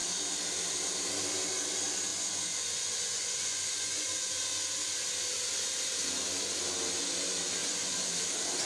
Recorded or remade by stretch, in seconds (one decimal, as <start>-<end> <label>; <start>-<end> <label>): 0.0-2.1 recorded; 2.1-4.4 remade; 4.4-7.6 recorded; 7.6-8.1 remade; 8.1-8.7 recorded